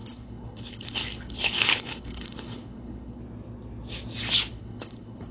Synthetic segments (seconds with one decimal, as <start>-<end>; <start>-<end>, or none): 0.0-3.2; 4.5-5.3

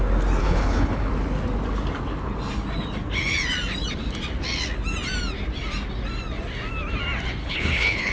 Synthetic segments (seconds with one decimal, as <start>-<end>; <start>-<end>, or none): 0.4-1.1; 7.4-8.1